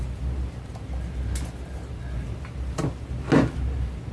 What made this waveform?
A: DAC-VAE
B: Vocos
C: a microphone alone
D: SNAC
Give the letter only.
C